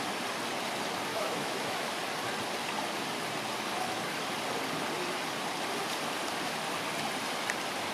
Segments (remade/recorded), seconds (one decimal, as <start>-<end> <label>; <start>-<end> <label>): 0.0-1.1 recorded; 1.1-2.0 remade; 2.0-7.9 recorded